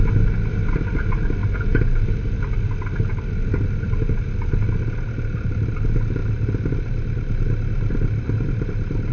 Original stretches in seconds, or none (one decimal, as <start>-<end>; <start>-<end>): 0.0-9.1